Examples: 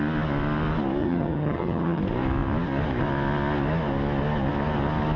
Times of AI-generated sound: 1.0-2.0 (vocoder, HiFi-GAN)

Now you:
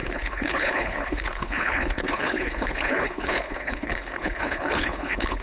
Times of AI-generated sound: 0.0-5.4 (codec, HILCodec)

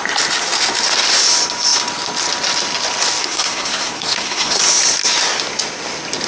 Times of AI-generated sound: 3.2-4.6 (codec, SNAC)

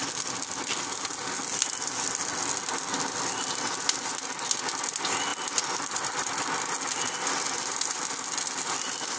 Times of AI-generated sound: none

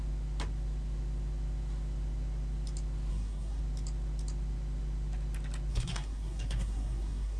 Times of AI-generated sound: 3.1-3.6 (codec, SNAC); 5.7-7.4

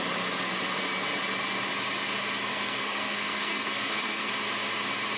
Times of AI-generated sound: 2.5-4.3 (codec, SNAC)

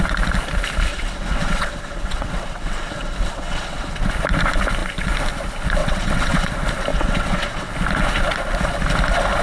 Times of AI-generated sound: 0.9-4.1 (vocoder, WaveNeXt); 5.8-6.5; 6.9-7.7